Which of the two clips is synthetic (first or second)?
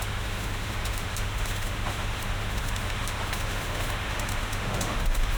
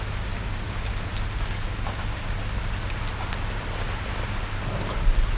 first